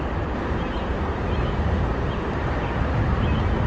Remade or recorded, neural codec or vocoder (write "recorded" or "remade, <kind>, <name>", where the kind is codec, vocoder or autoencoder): recorded